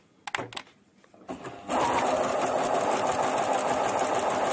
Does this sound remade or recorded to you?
recorded